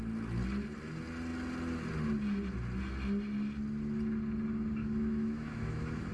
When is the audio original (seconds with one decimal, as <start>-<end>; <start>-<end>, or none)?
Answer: 0.0-4.8